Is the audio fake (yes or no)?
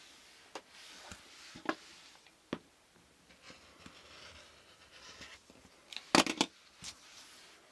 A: no